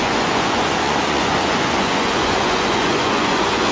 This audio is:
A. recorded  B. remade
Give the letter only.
B